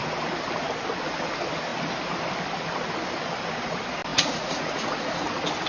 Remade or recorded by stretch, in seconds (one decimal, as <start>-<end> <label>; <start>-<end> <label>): 0.0-4.1 recorded; 4.1-5.1 remade; 5.1-5.7 recorded